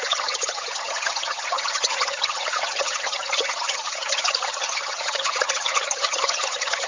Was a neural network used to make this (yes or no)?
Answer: yes